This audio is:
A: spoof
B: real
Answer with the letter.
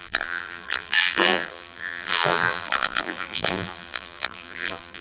A